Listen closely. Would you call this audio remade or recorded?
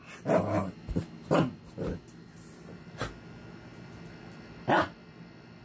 recorded